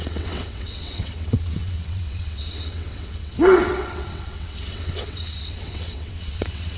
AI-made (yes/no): yes